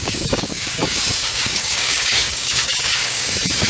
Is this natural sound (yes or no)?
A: no